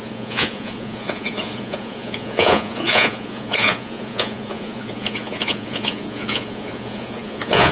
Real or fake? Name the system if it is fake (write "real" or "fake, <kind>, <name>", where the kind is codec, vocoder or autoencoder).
fake, vocoder, Vocos